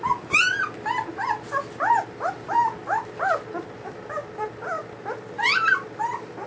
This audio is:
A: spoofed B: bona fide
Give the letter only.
B